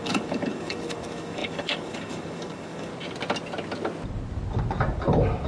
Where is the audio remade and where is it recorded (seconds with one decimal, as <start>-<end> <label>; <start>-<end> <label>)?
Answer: 0.0-2.9 remade; 2.9-5.5 recorded